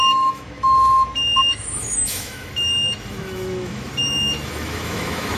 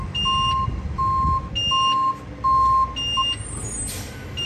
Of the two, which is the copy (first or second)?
first